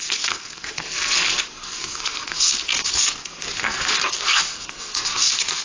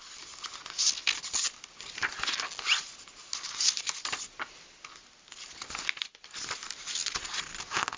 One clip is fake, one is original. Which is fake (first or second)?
first